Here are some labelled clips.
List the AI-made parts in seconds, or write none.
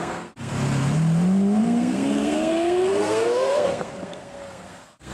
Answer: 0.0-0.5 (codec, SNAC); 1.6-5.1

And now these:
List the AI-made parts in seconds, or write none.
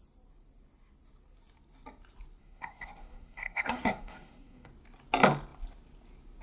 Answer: 2.4-4.7 (codec, SNAC)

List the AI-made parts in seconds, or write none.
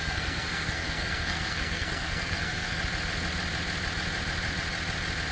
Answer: 0.0-2.8 (codec, SNAC)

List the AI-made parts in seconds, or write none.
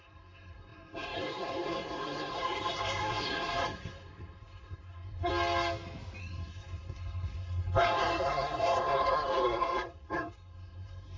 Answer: 0.0-5.3 (codec, SNAC); 6.2-11.2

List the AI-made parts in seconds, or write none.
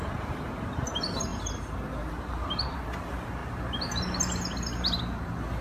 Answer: none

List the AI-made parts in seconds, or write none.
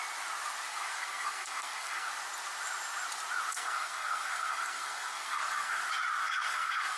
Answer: 0.7-2.1 (codec, SNAC); 3.5-5.8; 6.2-7.0